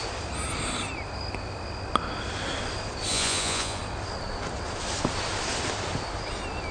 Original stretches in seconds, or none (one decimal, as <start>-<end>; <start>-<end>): 0.0-3.1; 3.8-6.7